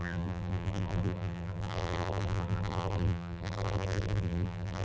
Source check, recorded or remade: remade